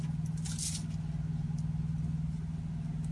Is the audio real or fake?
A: real